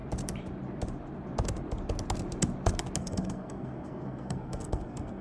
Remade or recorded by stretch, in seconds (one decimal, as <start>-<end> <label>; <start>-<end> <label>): 0.0-3.0 recorded; 3.0-5.2 remade